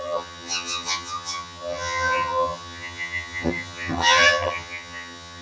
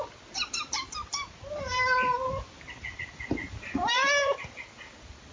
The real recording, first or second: second